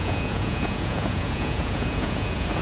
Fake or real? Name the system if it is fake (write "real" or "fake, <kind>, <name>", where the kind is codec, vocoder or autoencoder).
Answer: fake, vocoder, Vocos